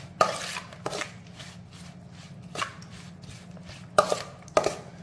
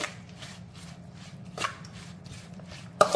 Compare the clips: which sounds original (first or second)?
first